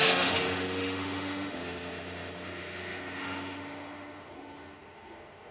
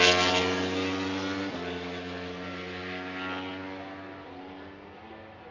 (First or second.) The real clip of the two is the second